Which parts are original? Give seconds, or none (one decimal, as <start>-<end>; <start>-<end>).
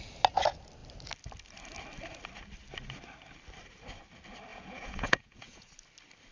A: 0.0-4.5; 5.7-6.3